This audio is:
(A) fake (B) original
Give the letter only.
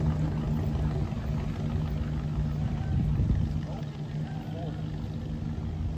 B